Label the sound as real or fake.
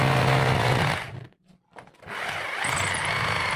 real